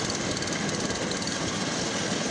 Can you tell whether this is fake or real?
real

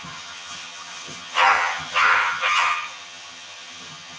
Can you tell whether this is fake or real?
fake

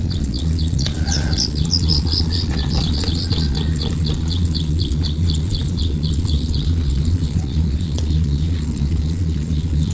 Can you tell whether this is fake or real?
fake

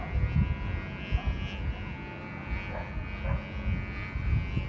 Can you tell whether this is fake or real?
real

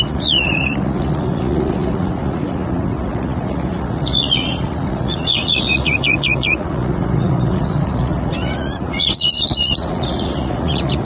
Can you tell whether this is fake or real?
fake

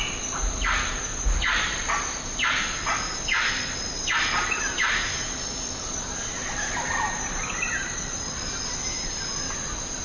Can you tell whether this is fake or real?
real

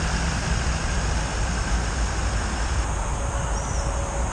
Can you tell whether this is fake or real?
real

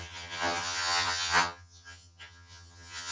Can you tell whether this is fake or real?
fake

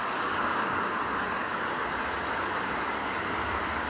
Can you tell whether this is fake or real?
fake